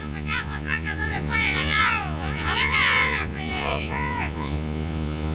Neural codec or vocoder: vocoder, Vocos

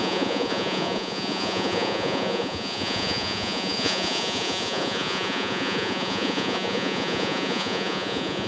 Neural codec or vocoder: vocoder, Vocos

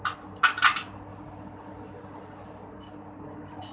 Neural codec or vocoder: none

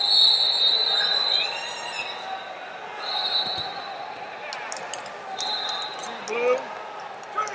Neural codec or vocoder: none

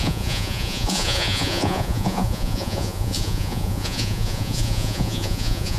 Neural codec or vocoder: vocoder, Vocos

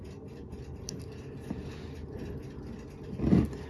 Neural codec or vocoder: none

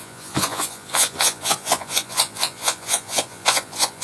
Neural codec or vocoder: vocoder, Vocos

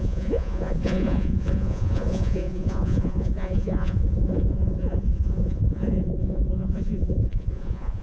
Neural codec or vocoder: vocoder, Vocos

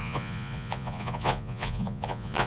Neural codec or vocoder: vocoder, Vocos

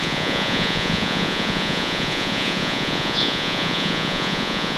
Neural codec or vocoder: vocoder, Vocos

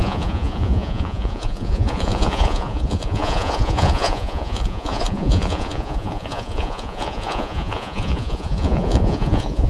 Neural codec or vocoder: vocoder, Vocos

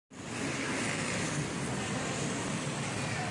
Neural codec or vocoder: none